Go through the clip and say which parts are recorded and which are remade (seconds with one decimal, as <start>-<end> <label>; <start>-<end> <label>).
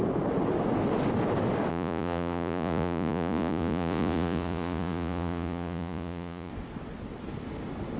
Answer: 0.0-1.7 recorded; 1.7-6.5 remade; 6.5-8.0 recorded